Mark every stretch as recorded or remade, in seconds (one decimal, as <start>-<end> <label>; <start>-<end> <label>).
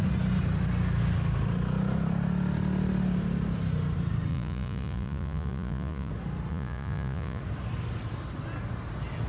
0.0-4.3 recorded; 4.3-6.1 remade; 6.1-6.5 recorded; 6.5-7.4 remade; 7.4-9.3 recorded